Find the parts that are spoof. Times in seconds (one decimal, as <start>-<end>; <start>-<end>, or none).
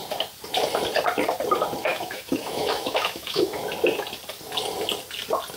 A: 1.9-3.6